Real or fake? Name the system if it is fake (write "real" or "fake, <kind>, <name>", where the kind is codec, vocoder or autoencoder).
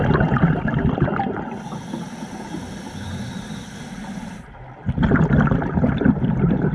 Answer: real